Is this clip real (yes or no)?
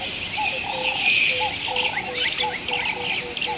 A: yes